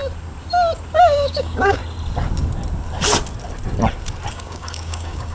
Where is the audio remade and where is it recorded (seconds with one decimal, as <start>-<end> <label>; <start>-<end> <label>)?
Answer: 0.0-1.0 recorded; 1.0-1.8 remade; 1.8-4.3 recorded; 4.3-5.3 remade